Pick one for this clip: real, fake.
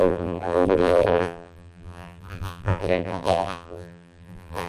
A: fake